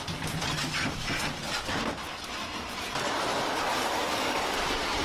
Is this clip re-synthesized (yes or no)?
yes